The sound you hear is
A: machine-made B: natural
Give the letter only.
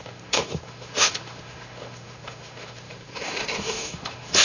A